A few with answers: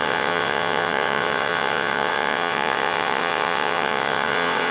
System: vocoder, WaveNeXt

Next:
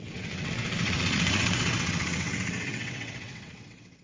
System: vocoder, WaveNeXt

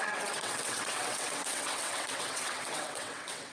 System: vocoder, WaveNeXt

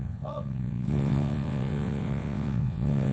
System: vocoder, WaveNeXt